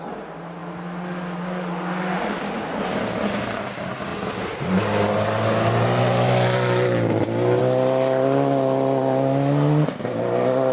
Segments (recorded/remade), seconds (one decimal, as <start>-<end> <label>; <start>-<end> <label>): 0.0-10.7 recorded